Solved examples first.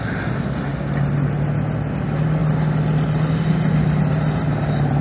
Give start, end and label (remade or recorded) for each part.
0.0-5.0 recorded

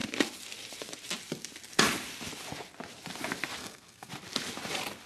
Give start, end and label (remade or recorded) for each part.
0.0-3.6 recorded; 3.6-4.1 remade; 4.1-5.1 recorded

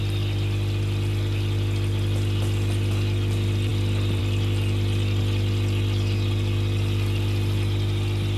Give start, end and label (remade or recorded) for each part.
0.0-8.4 recorded

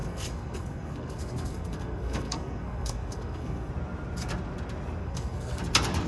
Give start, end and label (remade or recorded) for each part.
0.0-3.7 remade; 3.7-5.0 recorded; 5.0-5.6 remade; 5.6-6.1 recorded